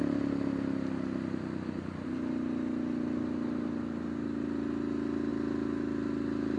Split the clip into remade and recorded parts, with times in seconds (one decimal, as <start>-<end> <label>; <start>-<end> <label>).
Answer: 0.0-6.6 recorded